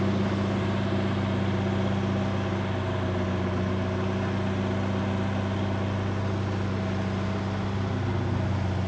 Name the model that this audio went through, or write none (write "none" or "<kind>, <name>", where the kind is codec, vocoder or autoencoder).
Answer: none